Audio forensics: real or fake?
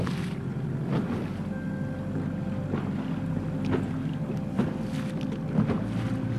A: real